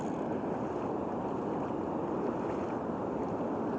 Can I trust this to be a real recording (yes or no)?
yes